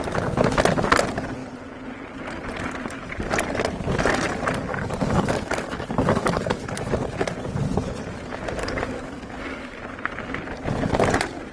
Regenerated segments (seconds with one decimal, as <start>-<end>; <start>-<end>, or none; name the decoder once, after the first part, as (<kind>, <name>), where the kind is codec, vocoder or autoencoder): 4.7-6.9 (codec, DAC); 8.6-9.8